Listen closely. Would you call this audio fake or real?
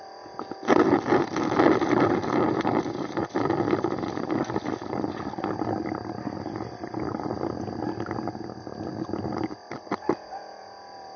real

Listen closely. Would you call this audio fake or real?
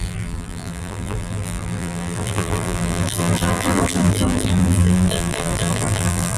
fake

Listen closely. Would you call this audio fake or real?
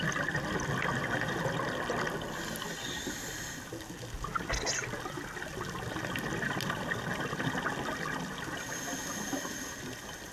real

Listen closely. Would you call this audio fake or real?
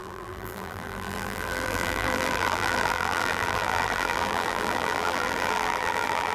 fake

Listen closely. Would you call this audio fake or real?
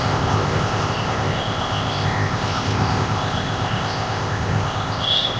fake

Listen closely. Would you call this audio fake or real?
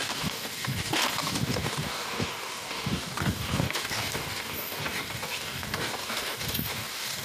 fake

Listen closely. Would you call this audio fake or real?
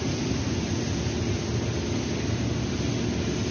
real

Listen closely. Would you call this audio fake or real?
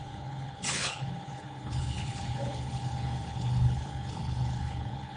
fake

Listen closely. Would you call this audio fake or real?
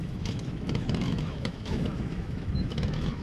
fake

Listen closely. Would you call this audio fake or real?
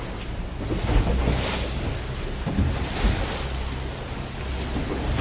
real